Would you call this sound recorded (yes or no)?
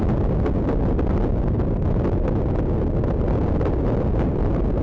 yes